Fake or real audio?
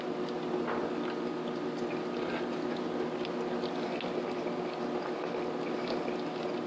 real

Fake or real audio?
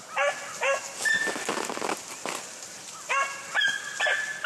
real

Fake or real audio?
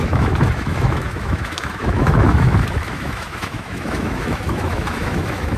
fake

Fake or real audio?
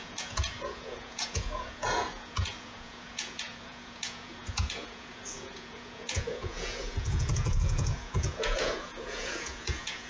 fake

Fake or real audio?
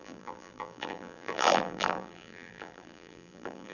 fake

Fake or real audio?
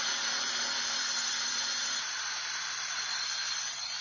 real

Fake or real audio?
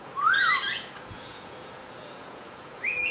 fake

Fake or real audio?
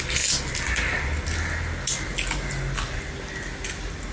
real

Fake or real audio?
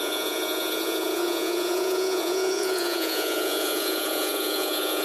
fake